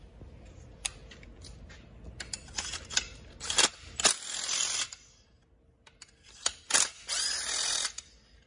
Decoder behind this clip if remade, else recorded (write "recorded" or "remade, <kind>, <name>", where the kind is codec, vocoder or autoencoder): recorded